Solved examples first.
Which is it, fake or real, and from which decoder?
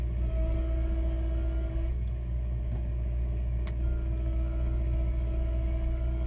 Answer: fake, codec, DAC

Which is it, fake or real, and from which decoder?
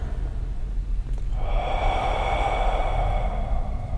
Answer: real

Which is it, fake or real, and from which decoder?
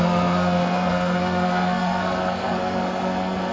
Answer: fake, codec, SNAC